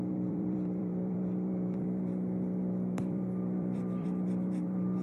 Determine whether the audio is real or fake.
fake